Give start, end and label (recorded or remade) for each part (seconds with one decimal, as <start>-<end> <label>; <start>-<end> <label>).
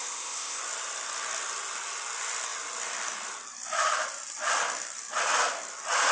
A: 0.0-0.6 remade; 0.6-6.1 recorded